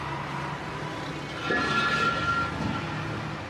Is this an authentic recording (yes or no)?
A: yes